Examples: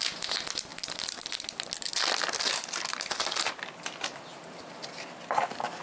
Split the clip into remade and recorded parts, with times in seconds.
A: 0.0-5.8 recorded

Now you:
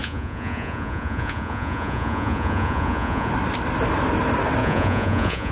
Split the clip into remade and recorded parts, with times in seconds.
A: 0.0-3.3 remade; 3.3-4.6 recorded; 4.6-5.5 remade

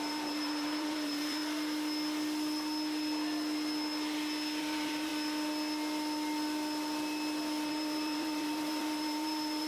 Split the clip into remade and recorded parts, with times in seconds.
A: 0.0-1.4 remade; 1.4-4.6 recorded; 4.6-5.1 remade; 5.1-7.7 recorded; 7.7-9.7 remade

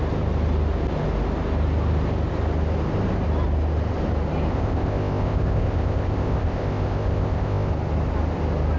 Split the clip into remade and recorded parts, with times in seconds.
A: 0.0-4.5 recorded; 4.5-7.7 remade; 7.7-8.8 recorded

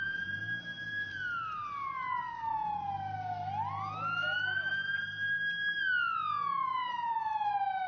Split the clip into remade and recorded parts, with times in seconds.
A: 0.0-7.9 recorded

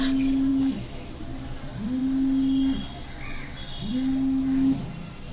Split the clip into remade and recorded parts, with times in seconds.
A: 0.0-0.5 recorded; 0.5-1.2 remade; 1.2-5.3 recorded

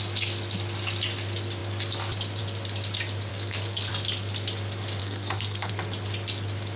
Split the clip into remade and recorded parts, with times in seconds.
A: 0.0-3.3 recorded; 3.3-3.9 remade; 3.9-5.0 recorded; 5.0-5.7 remade; 5.7-6.8 recorded

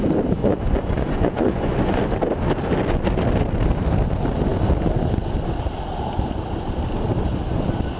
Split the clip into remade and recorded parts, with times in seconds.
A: 0.0-0.4 recorded; 0.4-2.0 remade; 2.0-8.0 recorded